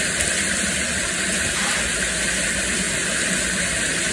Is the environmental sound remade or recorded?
recorded